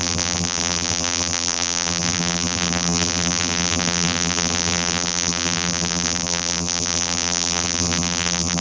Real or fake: fake